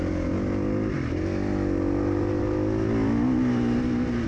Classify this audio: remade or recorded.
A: recorded